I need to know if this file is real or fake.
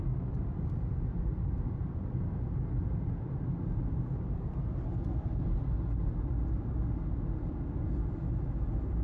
fake